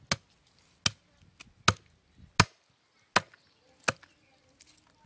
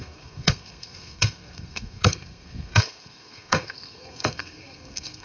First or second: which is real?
first